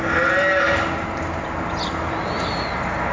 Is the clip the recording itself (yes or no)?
yes